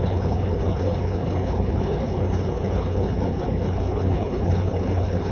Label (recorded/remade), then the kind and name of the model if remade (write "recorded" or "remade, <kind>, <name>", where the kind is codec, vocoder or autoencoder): remade, codec, HILCodec